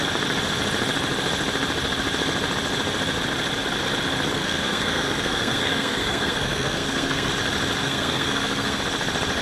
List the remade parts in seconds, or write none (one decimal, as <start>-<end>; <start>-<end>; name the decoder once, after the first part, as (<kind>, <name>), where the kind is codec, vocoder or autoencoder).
4.3-7.3 (codec, SNAC); 7.8-8.8